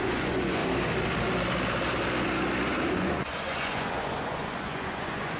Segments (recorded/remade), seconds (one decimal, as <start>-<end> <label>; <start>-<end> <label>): 0.0-0.6 remade; 0.6-2.9 recorded; 2.9-5.4 remade